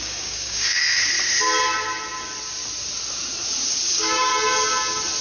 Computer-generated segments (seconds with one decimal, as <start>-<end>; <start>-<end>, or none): 0.0-0.8; 3.9-4.3